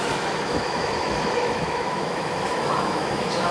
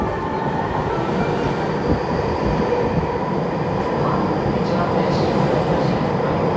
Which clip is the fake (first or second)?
first